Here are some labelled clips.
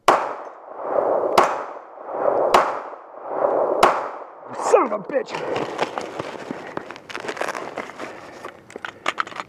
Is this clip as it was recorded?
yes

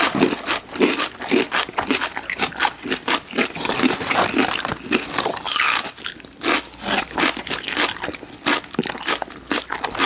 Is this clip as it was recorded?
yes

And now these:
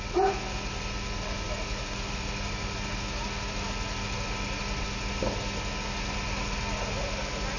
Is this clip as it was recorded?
yes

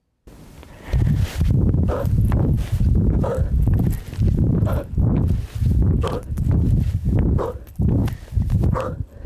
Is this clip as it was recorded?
yes